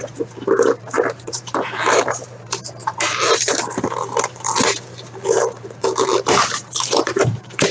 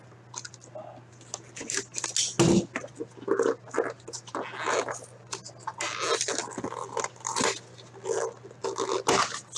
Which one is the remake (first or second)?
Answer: first